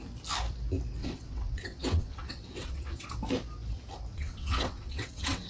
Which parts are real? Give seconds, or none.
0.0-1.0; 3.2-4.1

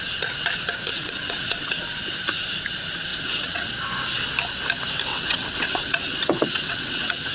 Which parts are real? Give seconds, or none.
0.0-0.9; 1.8-3.1; 3.7-5.1

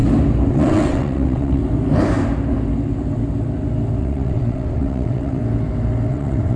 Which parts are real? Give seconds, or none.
0.0-0.5; 1.6-4.0; 5.4-6.1

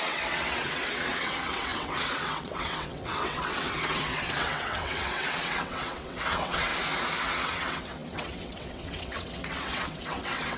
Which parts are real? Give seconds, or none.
6.7-7.2

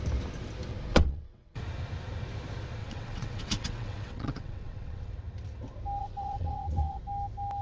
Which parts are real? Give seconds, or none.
0.0-0.9; 1.6-2.8; 5.1-6.0; 7.0-7.6

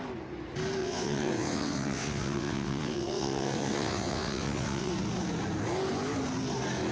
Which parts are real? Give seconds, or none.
0.0-0.8; 4.9-6.9

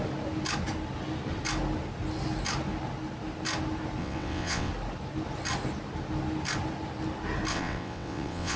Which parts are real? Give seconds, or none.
0.0-4.0; 4.7-7.5